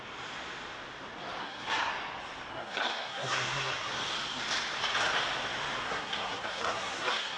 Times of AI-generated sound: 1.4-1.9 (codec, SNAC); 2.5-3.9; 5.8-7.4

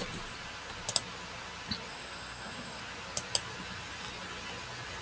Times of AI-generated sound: 1.9-2.8 (codec, SNAC)

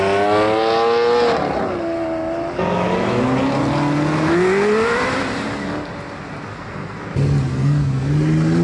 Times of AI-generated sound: 6.5-7.0 (codec, SNAC); 7.5-8.1

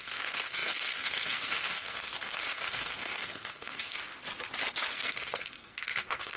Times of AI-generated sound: 0.0-4.1 (codec, SNAC); 4.9-6.4

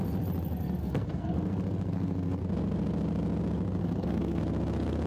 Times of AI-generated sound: 0.8-2.4 (codec, SNAC); 3.8-4.4

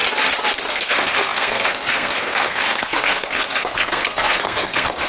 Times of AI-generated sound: 0.7-5.1 (codec, SNAC)

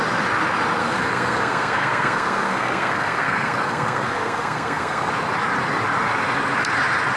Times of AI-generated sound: 0.8-5.1 (codec, SNAC)

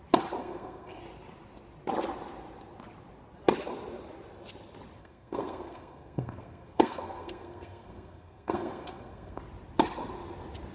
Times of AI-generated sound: 0.4-1.0 (codec, SNAC); 5.0-9.4